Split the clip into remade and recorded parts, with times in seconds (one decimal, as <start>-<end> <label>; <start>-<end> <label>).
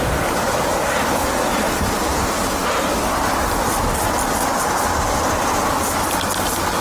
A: 0.0-6.8 recorded